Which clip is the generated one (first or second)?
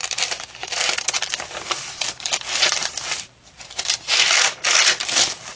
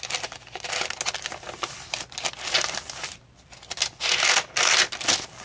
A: first